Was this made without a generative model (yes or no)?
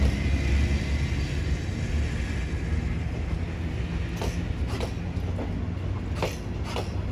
yes